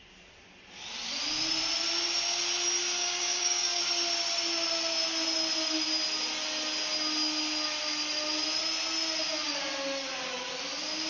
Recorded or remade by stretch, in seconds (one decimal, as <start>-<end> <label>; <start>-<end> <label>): 0.0-3.0 recorded; 3.0-3.8 remade; 3.8-11.1 recorded